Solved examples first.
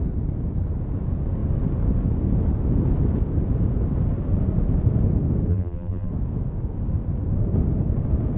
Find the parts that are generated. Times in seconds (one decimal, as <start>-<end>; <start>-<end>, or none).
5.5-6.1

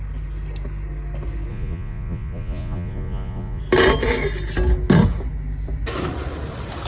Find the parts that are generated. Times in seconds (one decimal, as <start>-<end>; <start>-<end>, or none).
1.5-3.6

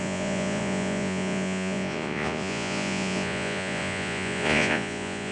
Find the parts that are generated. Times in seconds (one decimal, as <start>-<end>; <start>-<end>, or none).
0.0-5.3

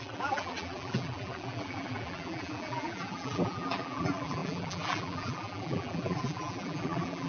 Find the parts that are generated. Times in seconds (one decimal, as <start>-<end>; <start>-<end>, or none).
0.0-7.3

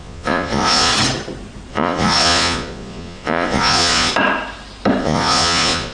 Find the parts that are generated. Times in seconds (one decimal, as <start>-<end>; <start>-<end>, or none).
0.0-0.9; 1.7-4.1; 5.0-5.9

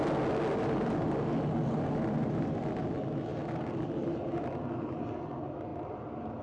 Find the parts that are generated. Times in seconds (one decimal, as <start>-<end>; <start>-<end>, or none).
none